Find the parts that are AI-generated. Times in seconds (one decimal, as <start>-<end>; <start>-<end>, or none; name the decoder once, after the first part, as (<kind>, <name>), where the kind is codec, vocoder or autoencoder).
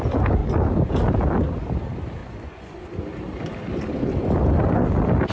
2.2-2.8 (vocoder, Vocos)